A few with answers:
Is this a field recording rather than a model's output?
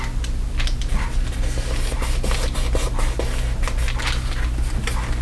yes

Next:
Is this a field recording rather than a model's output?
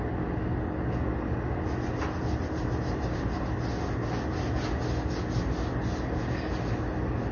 yes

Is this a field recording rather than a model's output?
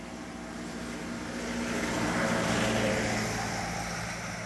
yes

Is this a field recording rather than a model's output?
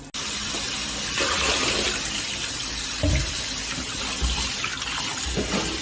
yes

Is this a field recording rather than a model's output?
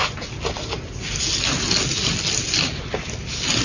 yes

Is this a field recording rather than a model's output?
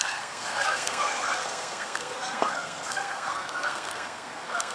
no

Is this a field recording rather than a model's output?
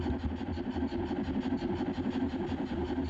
yes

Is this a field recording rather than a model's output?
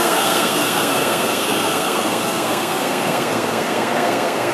no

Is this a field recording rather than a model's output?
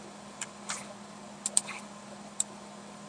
yes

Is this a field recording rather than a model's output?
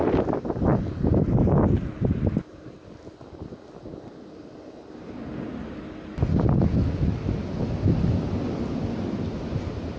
yes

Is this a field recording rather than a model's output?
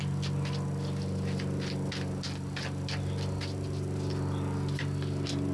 yes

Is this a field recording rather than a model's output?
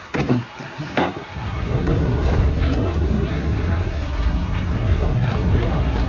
no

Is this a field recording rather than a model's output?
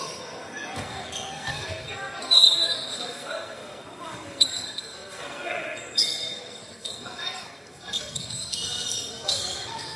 no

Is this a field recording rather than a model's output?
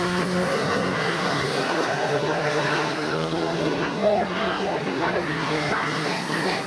no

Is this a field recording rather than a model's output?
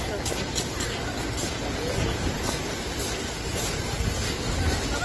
yes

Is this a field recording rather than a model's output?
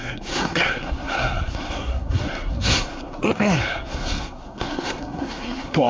no